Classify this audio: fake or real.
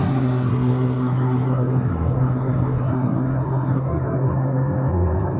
fake